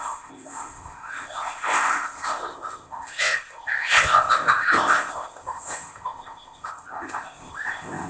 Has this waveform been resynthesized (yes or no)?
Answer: yes